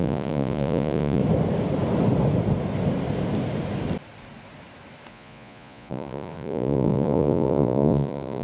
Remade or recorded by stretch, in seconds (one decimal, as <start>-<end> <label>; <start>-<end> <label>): 0.0-1.2 remade; 1.2-5.1 recorded; 5.1-8.4 remade

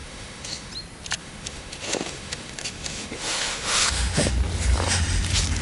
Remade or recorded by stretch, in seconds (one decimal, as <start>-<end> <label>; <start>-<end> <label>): 0.0-0.7 remade; 0.7-1.2 recorded; 1.2-4.3 remade; 4.3-5.6 recorded

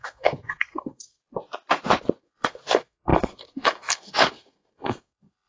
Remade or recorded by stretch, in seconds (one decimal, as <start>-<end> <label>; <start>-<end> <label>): 0.0-1.2 remade; 1.2-2.2 recorded; 2.2-5.5 remade

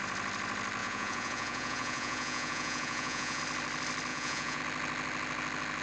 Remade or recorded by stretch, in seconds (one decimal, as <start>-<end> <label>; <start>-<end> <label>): 0.0-0.8 recorded; 0.8-3.4 remade; 3.4-4.1 recorded; 4.1-4.6 remade; 4.6-5.8 recorded

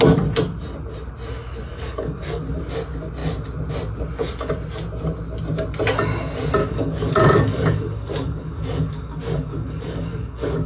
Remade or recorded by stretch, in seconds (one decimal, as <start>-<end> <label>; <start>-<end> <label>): 0.0-1.7 recorded; 1.7-2.4 remade; 2.4-6.6 recorded; 6.6-10.7 remade

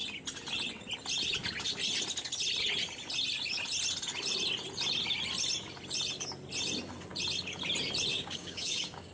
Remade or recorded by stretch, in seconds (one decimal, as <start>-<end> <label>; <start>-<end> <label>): 0.0-8.1 recorded; 8.1-9.1 remade